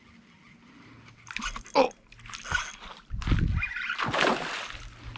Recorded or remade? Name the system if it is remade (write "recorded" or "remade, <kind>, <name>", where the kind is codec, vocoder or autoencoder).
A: recorded